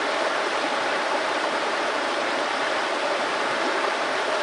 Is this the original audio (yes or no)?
no